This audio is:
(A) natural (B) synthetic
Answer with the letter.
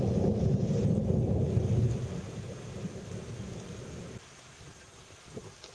A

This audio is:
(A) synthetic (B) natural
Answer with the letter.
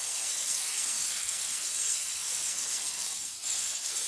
A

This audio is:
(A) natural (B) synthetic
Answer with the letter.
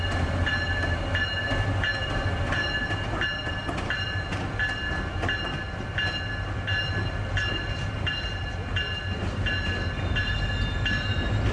A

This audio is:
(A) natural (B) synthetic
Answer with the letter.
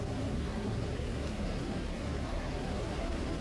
B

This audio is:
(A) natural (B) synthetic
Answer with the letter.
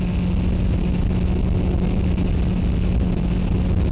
A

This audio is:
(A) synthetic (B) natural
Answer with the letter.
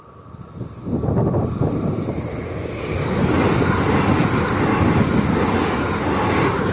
B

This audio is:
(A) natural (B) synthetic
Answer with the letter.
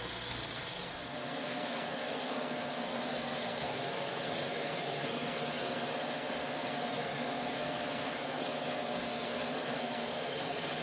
B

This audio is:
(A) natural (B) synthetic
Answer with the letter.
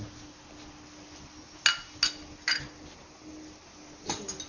A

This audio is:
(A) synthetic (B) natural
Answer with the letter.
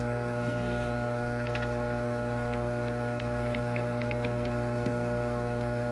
A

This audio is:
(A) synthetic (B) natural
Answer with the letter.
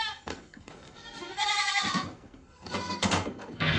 A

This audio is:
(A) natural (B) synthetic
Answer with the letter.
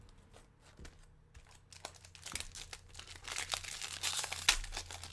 A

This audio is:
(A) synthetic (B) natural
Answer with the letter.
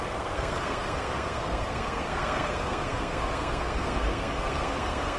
A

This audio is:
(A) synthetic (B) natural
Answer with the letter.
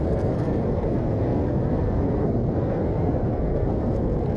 A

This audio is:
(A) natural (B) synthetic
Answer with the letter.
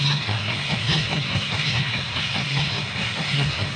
B